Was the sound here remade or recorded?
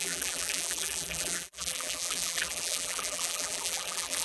remade